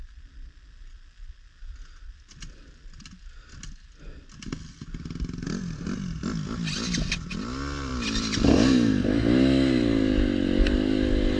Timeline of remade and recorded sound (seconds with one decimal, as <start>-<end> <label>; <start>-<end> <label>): 0.0-7.9 recorded; 7.9-8.5 remade; 8.5-11.4 recorded